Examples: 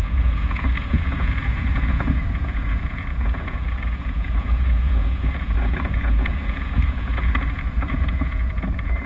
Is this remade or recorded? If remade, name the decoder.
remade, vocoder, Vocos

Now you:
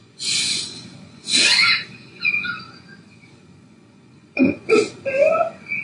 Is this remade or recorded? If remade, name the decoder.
remade, vocoder, Vocos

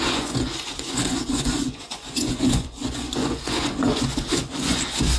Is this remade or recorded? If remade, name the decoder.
remade, vocoder, Vocos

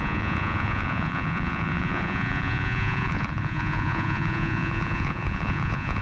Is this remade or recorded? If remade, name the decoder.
remade, vocoder, Vocos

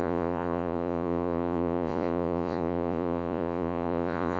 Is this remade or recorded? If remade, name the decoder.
remade, vocoder, Vocos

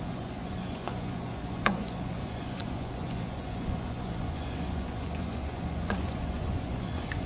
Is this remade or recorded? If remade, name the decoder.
remade, vocoder, Vocos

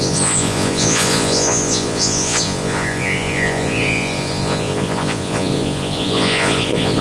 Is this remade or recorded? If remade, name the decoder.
remade, vocoder, Vocos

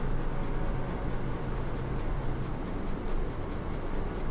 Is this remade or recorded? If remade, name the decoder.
recorded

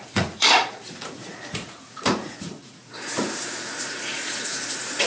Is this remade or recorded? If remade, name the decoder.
remade, vocoder, Vocos